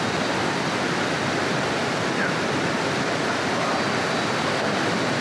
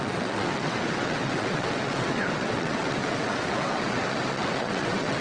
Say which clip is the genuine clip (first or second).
first